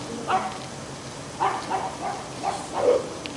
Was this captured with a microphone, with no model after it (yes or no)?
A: yes